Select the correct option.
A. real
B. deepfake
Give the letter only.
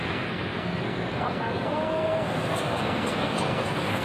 B